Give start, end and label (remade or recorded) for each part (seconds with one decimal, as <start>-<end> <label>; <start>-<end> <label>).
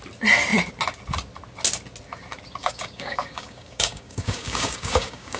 0.0-2.6 recorded; 2.6-5.4 remade